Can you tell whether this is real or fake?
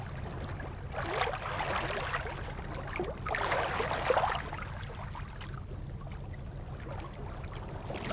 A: real